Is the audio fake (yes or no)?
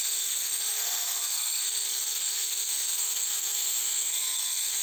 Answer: yes